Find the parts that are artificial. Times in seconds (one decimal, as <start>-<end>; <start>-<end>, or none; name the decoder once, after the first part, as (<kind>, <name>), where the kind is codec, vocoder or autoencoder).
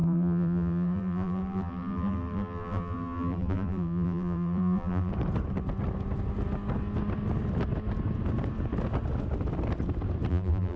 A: 0.0-5.1 (vocoder, BigVGAN v2); 10.3-10.8